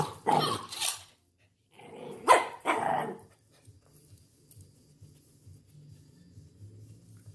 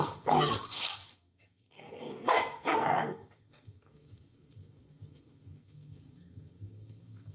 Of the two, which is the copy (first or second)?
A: second